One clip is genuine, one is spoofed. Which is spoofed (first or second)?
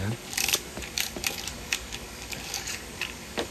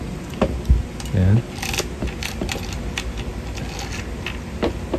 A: first